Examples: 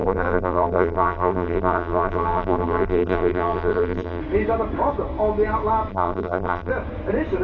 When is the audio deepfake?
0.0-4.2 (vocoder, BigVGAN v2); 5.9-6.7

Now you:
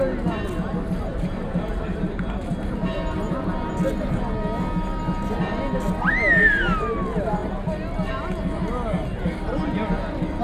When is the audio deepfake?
1.1-2.4 (vocoder, BigVGAN v2)

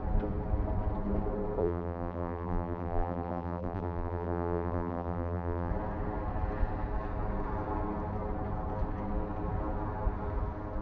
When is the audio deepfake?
1.6-5.7 (vocoder, BigVGAN v2)

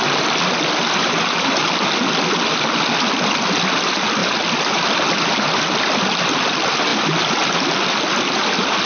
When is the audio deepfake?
none

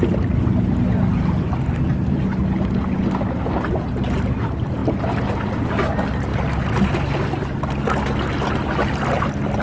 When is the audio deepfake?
none

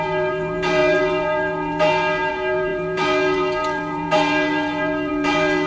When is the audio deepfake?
0.0-5.7 (vocoder, BigVGAN v2)

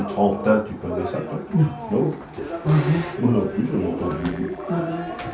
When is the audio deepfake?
4.2-4.7 (vocoder, BigVGAN v2)

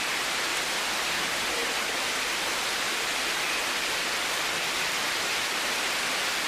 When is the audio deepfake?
0.0-0.5 (vocoder, BigVGAN v2); 1.2-6.5